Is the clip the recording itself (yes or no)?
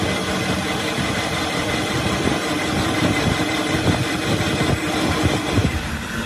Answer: no